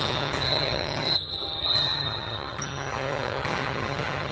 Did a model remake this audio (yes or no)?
yes